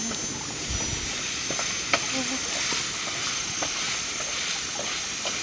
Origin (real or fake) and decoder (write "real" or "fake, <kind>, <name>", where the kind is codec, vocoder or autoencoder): real